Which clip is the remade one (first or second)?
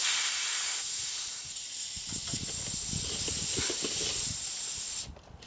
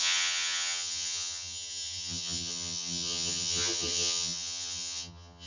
second